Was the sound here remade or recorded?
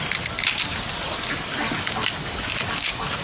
recorded